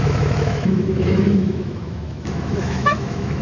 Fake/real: fake